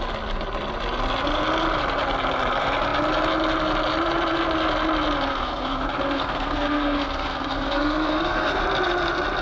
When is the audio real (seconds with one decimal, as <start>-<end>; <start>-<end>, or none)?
0.0-5.3; 8.6-9.4